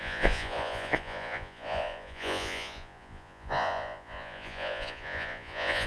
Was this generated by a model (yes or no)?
yes